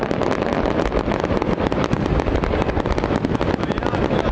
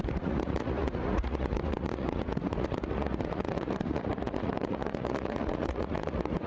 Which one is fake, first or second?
second